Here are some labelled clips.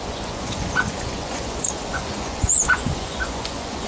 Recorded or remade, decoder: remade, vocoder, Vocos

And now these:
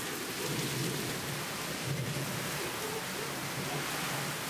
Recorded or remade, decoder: remade, vocoder, BigVGAN v2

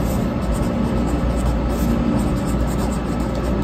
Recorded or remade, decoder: recorded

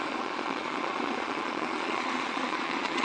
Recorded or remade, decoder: remade, vocoder, Vocos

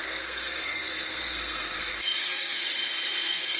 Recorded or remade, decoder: remade, codec, SNAC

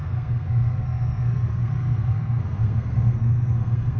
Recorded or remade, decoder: remade, codec, SNAC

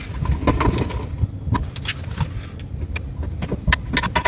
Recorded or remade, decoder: recorded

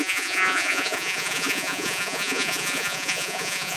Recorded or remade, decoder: remade, vocoder, Vocos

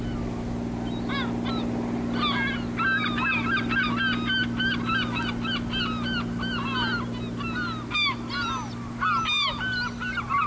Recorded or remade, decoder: recorded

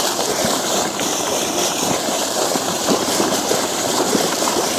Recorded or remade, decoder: remade, vocoder, BigVGAN v2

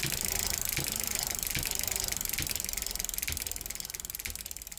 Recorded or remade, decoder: recorded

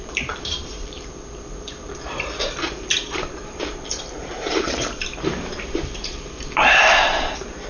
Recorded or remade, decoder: remade, vocoder, BigVGAN v2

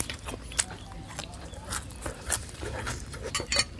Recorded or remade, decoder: recorded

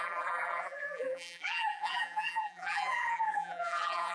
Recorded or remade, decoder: remade, vocoder, BigVGAN v2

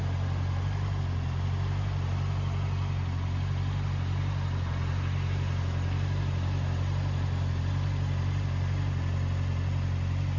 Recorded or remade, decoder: recorded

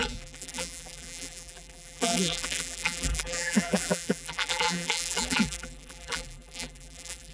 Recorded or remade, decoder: remade, vocoder, BigVGAN v2